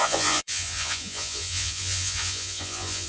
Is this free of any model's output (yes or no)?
no